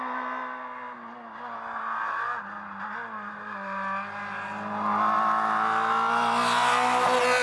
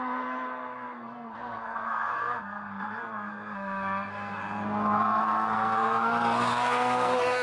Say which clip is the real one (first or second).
first